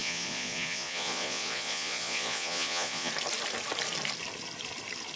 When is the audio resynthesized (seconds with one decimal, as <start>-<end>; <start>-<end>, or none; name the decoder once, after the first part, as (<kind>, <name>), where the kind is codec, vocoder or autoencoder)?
0.0-3.1 (vocoder, Vocos)